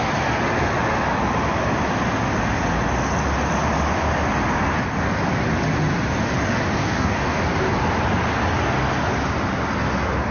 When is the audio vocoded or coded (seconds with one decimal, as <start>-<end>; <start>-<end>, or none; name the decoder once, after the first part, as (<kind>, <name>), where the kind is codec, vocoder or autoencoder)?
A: 6.8-7.4 (codec, DAC)